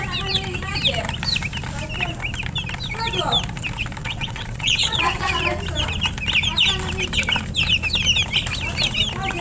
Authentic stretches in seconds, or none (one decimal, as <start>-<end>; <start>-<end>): 0.0-4.0; 5.4-9.4